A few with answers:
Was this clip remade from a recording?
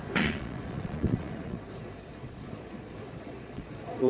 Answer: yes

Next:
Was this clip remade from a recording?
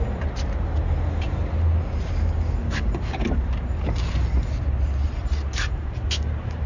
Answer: no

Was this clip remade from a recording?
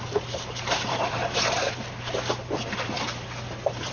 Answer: yes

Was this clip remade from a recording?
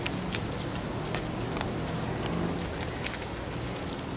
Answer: no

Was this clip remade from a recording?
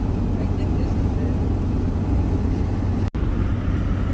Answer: no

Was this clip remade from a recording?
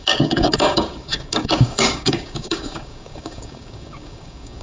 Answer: yes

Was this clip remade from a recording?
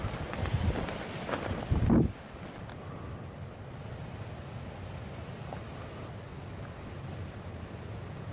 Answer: no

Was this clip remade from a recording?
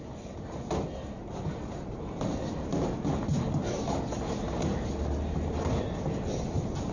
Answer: no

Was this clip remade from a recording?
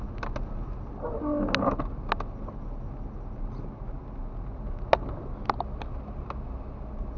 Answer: no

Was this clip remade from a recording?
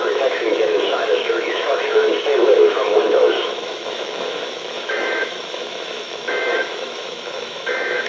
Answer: yes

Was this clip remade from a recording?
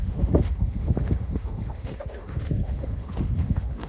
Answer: yes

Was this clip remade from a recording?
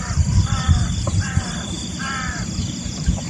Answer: yes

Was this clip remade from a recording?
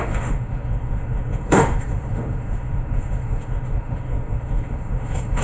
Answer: yes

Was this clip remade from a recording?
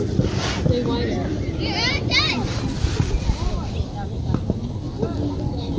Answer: no